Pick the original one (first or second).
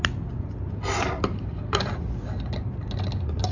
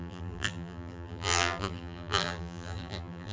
first